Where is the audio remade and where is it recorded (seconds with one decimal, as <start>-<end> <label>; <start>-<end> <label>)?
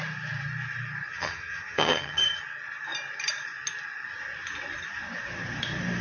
0.0-1.1 recorded; 1.1-2.4 remade; 2.4-6.0 recorded